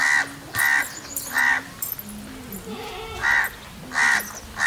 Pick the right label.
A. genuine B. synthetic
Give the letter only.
A